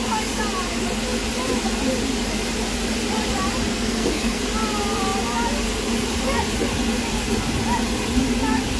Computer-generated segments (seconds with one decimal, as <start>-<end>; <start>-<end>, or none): 3.7-4.4